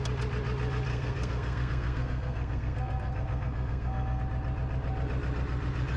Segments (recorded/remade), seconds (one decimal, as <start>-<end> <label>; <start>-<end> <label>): 0.0-0.9 recorded; 0.9-4.2 remade; 4.2-6.0 recorded